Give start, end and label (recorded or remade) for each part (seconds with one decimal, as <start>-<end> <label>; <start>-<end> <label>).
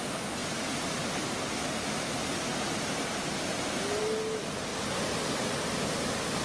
0.0-6.4 recorded